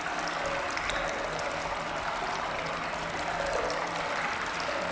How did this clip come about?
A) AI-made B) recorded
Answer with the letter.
B